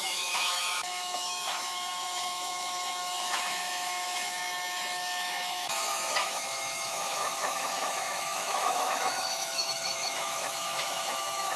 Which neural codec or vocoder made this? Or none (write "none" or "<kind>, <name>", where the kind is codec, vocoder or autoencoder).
autoencoder, DAC-VAE